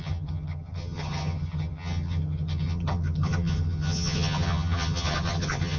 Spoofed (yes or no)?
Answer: yes